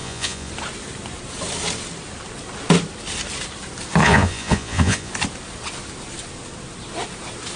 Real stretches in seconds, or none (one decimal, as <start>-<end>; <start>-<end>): 0.5-4.0; 5.1-7.6

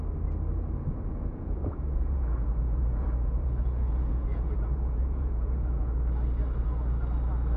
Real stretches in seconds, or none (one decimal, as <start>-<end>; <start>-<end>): 0.0-1.3; 5.9-7.6

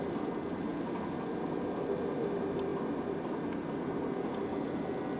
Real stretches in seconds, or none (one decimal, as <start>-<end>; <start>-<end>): 0.0-5.2

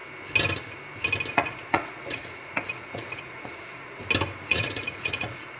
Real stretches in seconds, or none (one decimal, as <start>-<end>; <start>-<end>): 0.0-1.3; 4.0-4.5

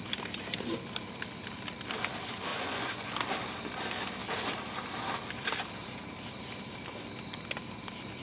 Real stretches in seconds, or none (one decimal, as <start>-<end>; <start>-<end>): 0.0-2.5; 3.1-8.2

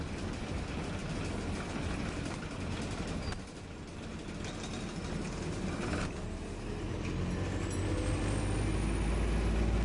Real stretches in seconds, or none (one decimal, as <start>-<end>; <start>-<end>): 0.0-9.8

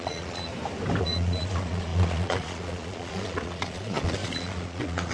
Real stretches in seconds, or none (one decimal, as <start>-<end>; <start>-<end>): 0.5-1.0

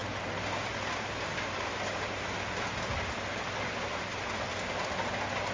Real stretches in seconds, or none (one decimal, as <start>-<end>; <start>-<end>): 0.0-5.5